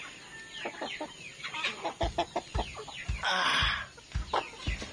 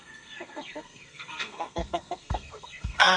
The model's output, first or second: second